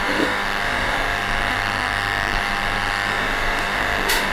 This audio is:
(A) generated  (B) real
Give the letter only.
A